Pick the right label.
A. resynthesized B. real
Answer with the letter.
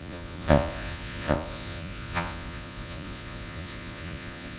A